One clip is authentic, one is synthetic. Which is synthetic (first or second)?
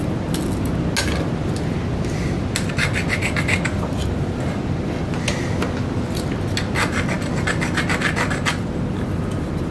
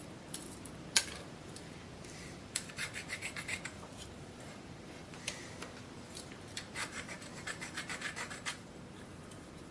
second